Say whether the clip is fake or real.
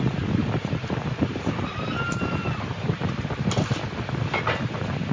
real